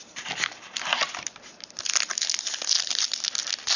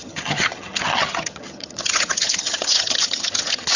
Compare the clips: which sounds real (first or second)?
first